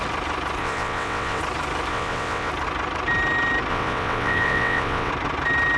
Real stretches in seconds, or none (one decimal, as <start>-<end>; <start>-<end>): 0.0-0.6; 1.4-1.9; 2.5-3.7; 5.1-5.8